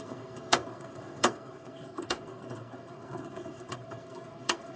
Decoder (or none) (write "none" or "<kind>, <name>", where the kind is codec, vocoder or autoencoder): codec, SNAC